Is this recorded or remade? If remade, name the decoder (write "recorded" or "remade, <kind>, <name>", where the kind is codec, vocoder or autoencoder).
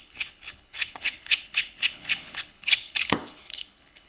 remade, codec, HILCodec